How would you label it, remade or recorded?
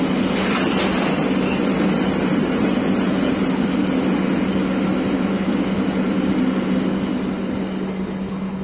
recorded